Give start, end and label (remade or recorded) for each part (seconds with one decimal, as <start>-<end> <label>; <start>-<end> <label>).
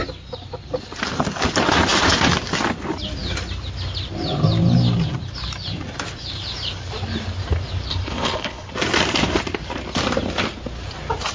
0.0-7.9 recorded; 7.9-8.7 remade; 8.7-11.3 recorded